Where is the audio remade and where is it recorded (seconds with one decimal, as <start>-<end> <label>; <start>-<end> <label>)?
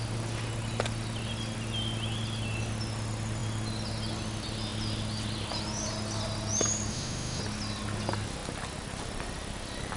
0.0-6.9 recorded; 6.9-7.4 remade; 7.4-10.0 recorded